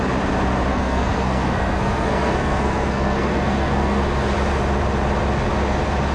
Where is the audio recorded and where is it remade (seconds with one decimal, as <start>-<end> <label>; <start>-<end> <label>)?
0.0-0.7 recorded; 0.7-4.0 remade; 4.0-6.1 recorded